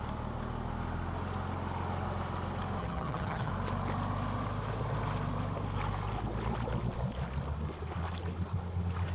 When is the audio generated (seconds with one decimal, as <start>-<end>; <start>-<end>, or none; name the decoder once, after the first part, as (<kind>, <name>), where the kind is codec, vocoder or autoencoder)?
2.8-3.5 (vocoder, HiFi-GAN)